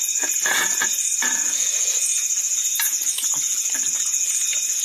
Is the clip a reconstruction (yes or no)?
yes